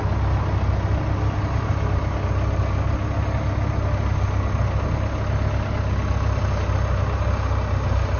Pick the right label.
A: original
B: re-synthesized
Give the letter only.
A